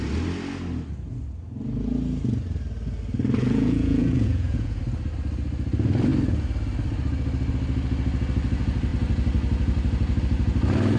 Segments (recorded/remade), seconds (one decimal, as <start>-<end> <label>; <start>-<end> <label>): 0.0-3.4 recorded; 3.4-4.8 remade; 4.8-11.0 recorded